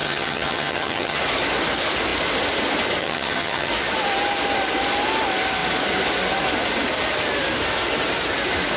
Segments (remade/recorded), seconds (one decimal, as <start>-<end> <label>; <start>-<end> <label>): 0.0-1.2 remade; 1.2-3.0 recorded; 3.0-3.7 remade; 3.7-8.8 recorded